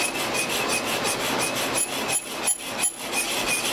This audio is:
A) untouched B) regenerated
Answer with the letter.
A